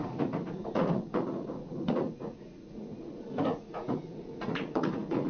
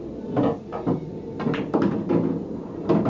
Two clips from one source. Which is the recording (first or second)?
second